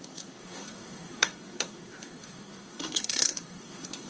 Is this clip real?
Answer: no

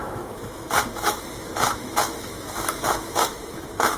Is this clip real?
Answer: no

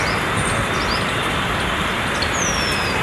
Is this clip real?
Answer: yes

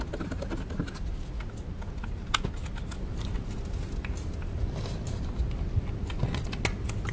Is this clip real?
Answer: yes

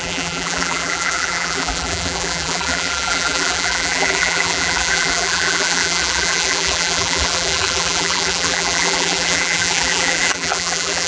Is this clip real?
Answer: no